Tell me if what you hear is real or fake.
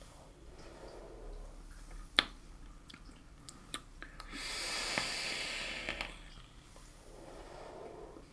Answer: real